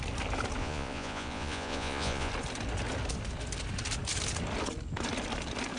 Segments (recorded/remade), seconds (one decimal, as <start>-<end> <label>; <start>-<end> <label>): 0.0-0.6 recorded; 0.6-2.3 remade; 2.3-5.8 recorded